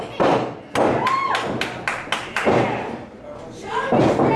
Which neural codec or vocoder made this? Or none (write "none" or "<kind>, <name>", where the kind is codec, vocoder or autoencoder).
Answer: none